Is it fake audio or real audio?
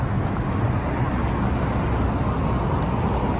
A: real